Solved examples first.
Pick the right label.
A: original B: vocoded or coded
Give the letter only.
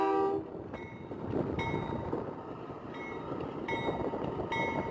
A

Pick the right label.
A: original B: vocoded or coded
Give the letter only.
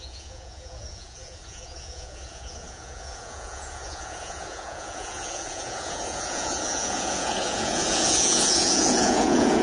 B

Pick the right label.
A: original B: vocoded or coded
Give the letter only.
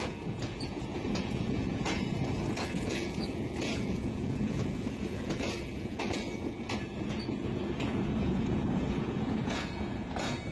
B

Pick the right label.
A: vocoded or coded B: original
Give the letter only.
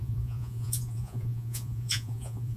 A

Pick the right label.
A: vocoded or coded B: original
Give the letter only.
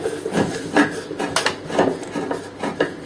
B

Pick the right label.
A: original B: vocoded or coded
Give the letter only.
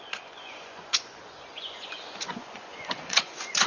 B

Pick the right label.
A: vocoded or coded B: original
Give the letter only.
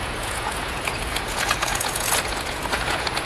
A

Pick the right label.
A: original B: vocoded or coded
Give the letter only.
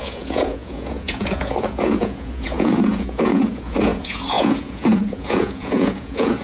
B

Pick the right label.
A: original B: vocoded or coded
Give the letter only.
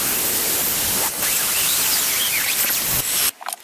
A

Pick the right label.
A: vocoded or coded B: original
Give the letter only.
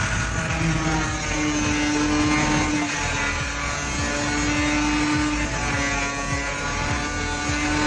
B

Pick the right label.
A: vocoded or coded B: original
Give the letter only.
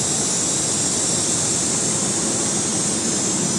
B